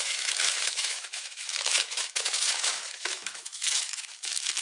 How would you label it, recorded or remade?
remade